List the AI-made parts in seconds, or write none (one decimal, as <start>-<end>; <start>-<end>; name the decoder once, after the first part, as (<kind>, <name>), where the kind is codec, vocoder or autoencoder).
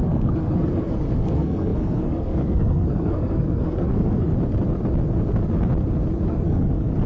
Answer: 0.0-4.3 (codec, SNAC); 6.3-7.1